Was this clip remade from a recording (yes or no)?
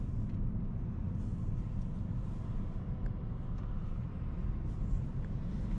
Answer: no